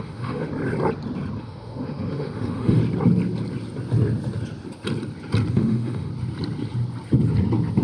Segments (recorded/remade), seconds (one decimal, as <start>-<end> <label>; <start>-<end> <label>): 0.0-0.5 remade; 0.5-1.4 recorded; 1.4-2.8 remade; 2.8-5.5 recorded; 5.5-6.1 remade; 6.1-7.8 recorded